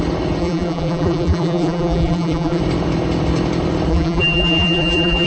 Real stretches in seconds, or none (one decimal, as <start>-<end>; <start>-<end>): 0.0-0.4; 2.6-3.9